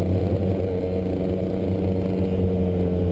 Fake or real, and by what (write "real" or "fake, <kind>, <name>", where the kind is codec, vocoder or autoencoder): real